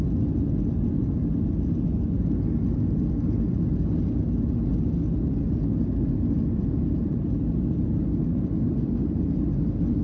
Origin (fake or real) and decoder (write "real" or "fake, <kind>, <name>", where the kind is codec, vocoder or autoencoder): real